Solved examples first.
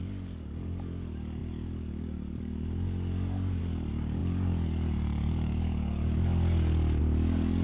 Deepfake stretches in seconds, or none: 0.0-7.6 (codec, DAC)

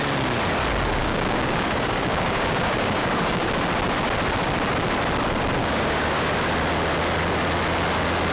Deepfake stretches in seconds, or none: 1.0-3.5 (codec, DAC); 5.6-6.3

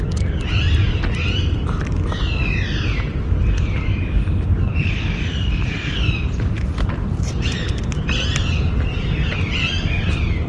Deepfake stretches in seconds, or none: 4.7-7.8 (vocoder, BigVGAN v2)